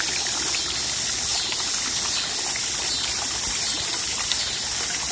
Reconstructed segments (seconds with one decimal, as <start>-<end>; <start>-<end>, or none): none